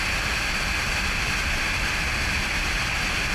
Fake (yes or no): no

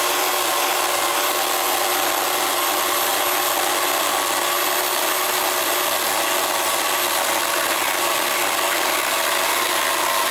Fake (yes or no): no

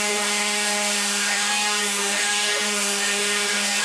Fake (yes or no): yes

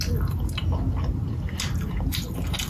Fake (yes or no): no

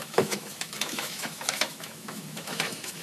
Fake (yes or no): yes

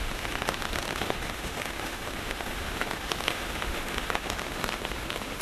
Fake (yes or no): yes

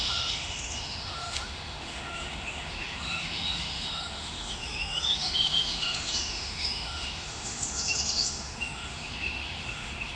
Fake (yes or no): yes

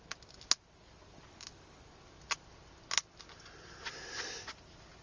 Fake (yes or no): no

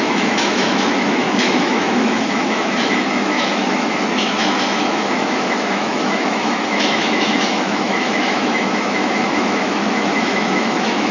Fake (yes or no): yes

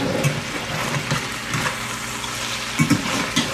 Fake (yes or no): no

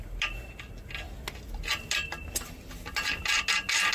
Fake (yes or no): no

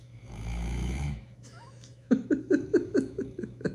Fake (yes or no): yes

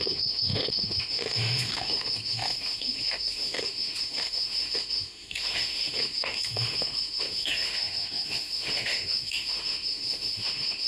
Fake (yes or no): yes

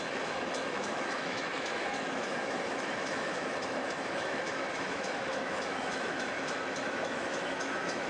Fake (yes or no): yes